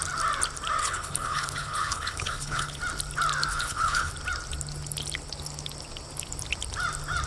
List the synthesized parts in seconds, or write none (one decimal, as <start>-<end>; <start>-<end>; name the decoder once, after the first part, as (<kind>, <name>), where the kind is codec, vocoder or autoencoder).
0.8-2.8 (codec, HILCodec); 3.5-4.1